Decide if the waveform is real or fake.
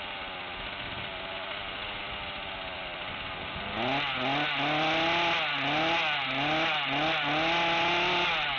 real